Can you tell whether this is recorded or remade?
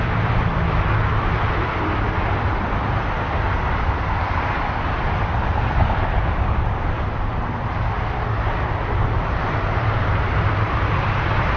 remade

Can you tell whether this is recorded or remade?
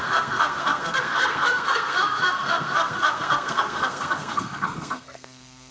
remade